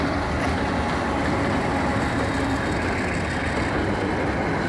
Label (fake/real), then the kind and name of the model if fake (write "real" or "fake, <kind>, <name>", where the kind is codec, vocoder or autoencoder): real